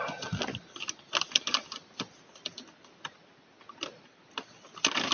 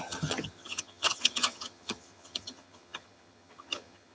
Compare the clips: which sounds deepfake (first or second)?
second